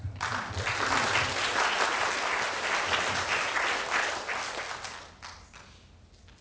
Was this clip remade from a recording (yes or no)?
no